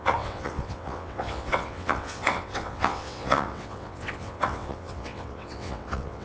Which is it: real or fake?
fake